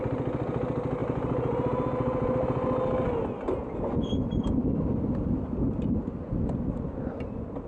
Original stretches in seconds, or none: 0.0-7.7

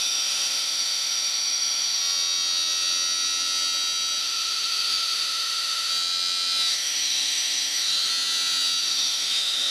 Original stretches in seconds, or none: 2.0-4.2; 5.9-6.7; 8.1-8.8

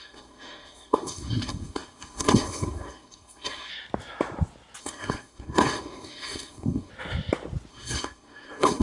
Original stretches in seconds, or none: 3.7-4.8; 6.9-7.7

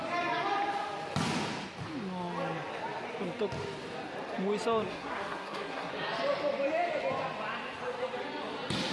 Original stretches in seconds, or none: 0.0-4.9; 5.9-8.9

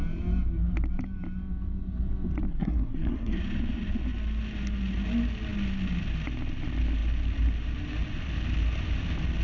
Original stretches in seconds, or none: 0.0-2.5; 3.4-9.4

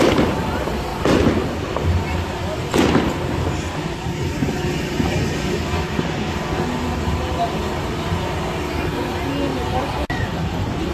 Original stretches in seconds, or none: 0.0-9.5; 10.4-10.9